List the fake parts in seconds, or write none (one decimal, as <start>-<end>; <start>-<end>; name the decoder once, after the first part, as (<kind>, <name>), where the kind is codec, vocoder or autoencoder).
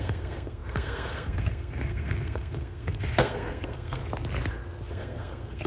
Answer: 0.0-4.0 (codec, SNAC); 4.9-5.7